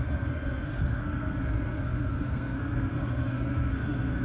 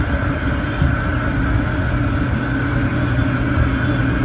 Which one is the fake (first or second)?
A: first